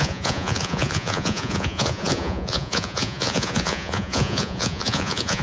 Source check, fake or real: fake